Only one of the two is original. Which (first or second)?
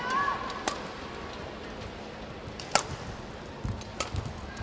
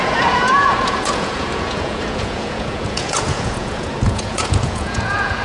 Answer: first